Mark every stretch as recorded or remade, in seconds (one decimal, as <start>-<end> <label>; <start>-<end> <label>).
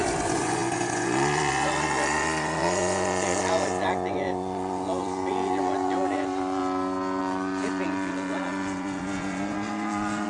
0.0-6.6 remade; 6.6-7.2 recorded; 7.2-10.3 remade